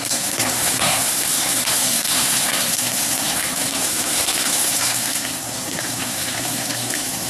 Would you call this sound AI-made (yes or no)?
yes